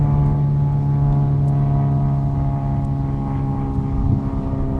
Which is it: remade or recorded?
recorded